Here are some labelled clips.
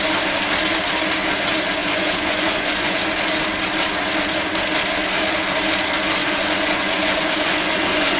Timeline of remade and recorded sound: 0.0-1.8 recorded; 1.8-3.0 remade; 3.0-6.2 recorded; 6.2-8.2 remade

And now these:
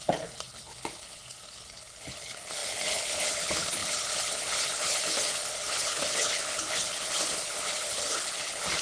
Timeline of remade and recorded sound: 0.0-8.8 remade

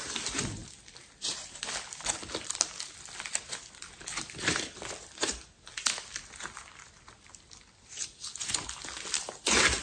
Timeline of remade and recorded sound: 0.0-9.8 recorded

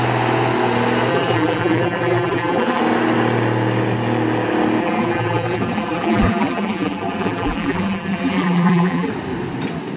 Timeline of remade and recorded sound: 0.0-1.1 recorded; 1.1-2.8 remade; 2.8-4.8 recorded; 4.8-9.1 remade; 9.1-10.0 recorded

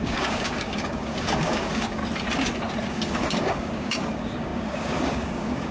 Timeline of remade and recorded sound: 0.0-2.0 remade; 2.0-2.9 recorded; 2.9-5.7 remade

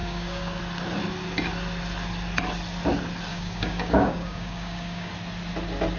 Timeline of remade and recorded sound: 0.0-0.6 remade; 0.6-3.3 recorded; 3.3-5.1 remade; 5.1-6.0 recorded

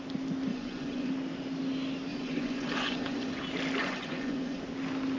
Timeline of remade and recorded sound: 0.0-0.5 recorded; 0.5-1.1 remade; 1.1-2.1 recorded; 2.1-3.4 remade; 3.4-3.8 recorded; 3.8-4.6 remade; 4.6-5.2 recorded

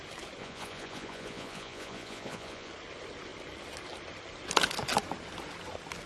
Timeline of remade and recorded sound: 0.0-0.4 recorded; 0.4-2.7 remade; 2.7-6.1 recorded